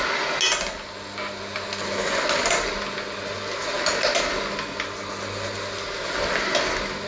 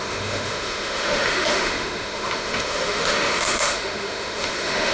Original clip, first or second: first